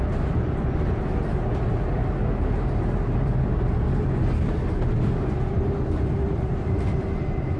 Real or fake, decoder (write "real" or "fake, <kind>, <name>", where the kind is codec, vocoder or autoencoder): real